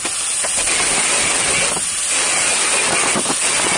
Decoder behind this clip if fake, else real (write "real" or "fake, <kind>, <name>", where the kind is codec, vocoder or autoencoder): real